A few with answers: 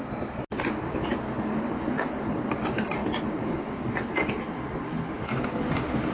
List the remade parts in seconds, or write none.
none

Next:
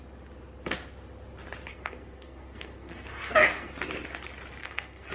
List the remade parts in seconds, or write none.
1.7-3.7 (codec, SNAC); 4.6-5.1

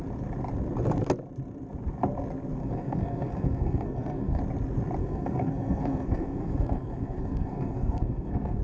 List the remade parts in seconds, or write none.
2.6-4.4 (codec, SNAC); 5.0-8.6

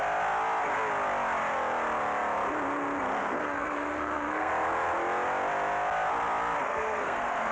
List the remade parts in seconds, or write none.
3.2-4.5 (codec, SNAC); 6.6-7.5

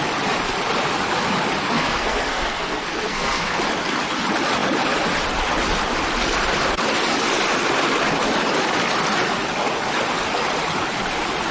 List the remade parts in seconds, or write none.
1.6-3.6 (codec, SNAC)

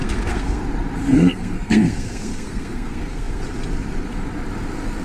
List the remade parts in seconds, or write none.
0.0-0.6 (codec, SNAC); 1.0-3.4